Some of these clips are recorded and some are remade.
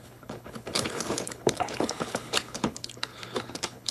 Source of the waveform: remade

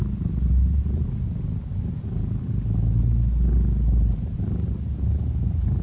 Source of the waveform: recorded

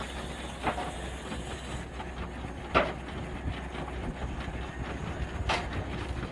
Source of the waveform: recorded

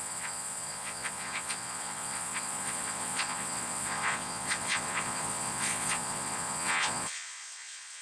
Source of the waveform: remade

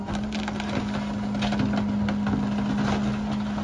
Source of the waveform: recorded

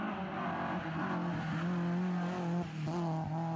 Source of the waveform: recorded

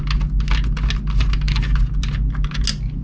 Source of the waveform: recorded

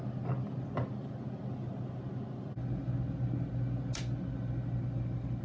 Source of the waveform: recorded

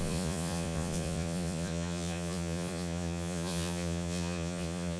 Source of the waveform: remade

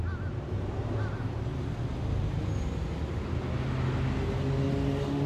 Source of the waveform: recorded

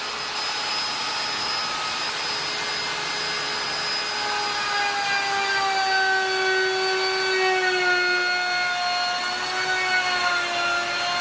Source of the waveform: recorded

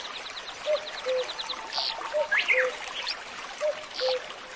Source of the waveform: recorded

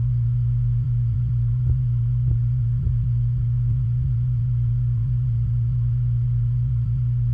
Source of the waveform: remade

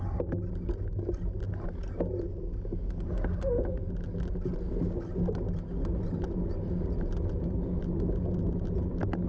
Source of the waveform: recorded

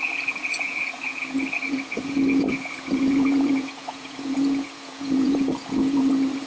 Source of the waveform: remade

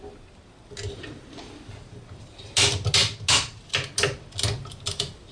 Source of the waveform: recorded